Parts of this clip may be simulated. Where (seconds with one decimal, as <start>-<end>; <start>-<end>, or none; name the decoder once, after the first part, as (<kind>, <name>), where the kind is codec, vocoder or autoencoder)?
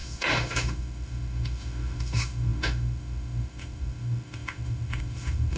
0.0-5.6 (autoencoder, DAC-VAE)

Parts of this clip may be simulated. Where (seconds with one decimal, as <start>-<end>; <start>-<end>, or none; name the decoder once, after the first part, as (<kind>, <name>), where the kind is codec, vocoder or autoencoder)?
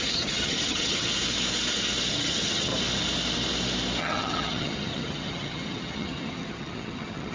0.0-1.1 (vocoder, HiFi-GAN); 2.1-2.7; 4.0-7.3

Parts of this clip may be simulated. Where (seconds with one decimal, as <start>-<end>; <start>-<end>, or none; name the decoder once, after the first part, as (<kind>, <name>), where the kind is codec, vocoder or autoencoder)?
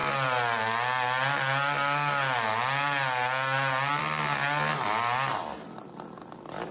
none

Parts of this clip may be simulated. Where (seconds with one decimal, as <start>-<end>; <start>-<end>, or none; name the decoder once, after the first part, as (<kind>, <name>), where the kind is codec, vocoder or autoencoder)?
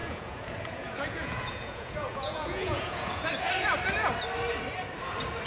0.0-3.3 (vocoder, Vocos)